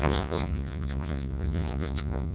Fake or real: fake